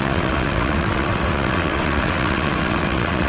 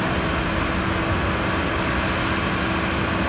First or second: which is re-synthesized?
first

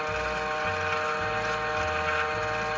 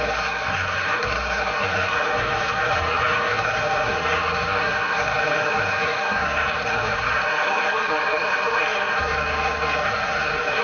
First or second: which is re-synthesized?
second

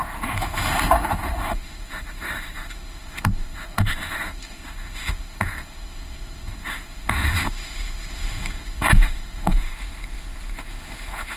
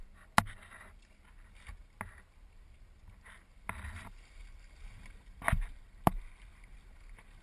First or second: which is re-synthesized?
first